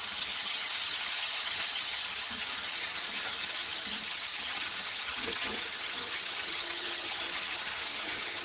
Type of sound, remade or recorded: remade